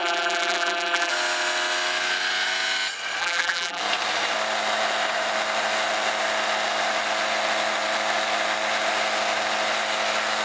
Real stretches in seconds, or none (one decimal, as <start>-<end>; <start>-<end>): 1.1-3.2; 3.8-10.4